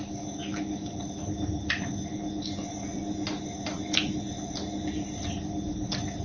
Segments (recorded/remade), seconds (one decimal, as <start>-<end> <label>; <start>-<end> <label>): 0.0-6.2 recorded